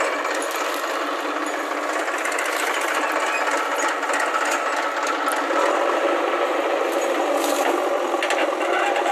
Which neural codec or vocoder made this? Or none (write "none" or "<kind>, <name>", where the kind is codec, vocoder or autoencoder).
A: none